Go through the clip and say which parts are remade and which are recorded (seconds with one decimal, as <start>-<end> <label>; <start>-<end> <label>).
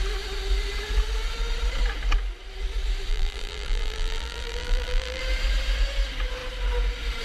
0.0-3.1 recorded; 3.1-5.2 remade; 5.2-7.2 recorded